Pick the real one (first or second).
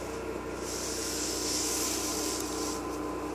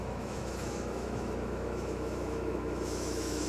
first